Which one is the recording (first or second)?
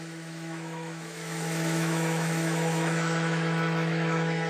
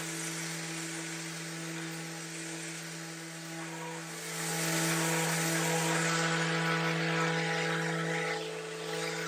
second